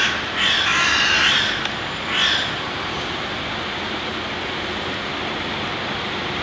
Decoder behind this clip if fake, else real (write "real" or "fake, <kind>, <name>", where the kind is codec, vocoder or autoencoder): real